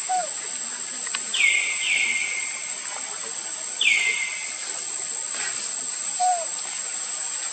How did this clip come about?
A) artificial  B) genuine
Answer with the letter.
B